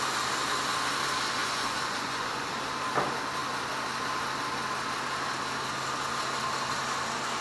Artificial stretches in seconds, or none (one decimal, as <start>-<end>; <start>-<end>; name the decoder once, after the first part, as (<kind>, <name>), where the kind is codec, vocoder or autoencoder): 1.4-2.5 (vocoder, Vocos)